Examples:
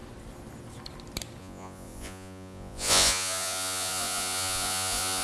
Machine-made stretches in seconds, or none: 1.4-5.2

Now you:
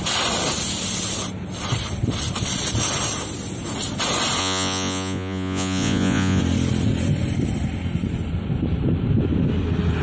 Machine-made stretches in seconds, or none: 4.4-6.4

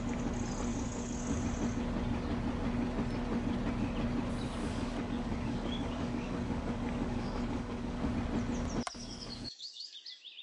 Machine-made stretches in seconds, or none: 0.7-1.4; 4.6-8.1; 9.0-9.9

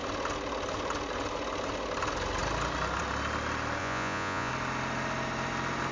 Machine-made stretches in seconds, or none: 3.8-4.5